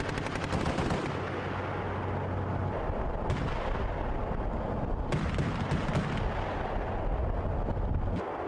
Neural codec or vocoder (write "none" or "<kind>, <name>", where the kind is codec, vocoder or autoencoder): none